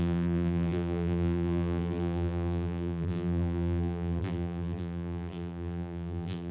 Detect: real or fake fake